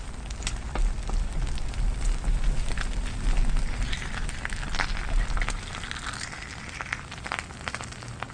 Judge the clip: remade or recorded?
recorded